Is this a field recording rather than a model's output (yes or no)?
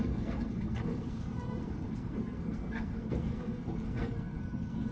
no